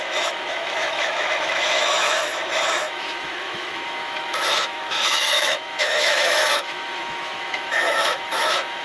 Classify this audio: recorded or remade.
remade